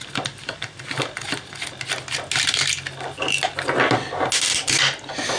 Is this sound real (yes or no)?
yes